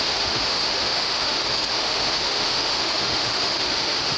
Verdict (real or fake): fake